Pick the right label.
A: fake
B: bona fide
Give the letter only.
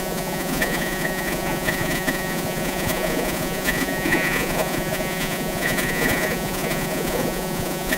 A